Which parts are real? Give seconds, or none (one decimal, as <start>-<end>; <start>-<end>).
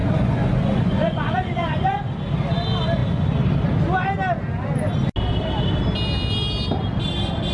2.0-7.5